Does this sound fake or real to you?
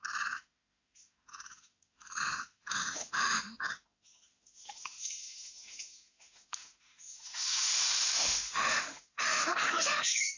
fake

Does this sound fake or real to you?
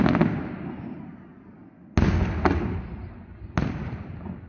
real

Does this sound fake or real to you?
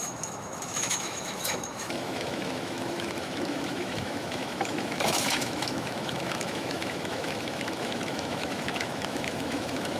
fake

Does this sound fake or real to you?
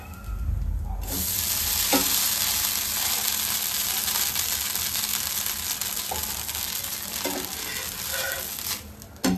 real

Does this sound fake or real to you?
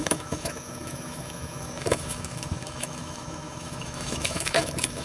fake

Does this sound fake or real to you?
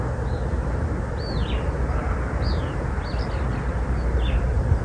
real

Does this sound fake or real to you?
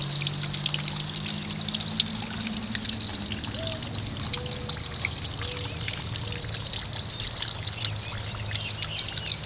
real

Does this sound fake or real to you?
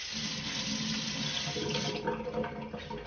real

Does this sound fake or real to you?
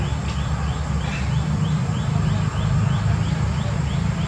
real